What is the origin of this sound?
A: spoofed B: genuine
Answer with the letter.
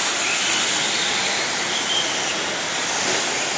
B